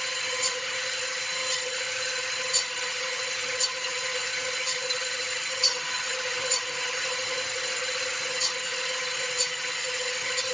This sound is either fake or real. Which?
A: fake